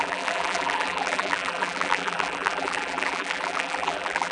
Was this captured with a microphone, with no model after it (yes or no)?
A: no